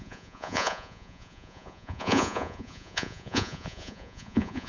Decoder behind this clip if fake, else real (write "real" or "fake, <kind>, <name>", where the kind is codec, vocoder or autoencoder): fake, vocoder, Vocos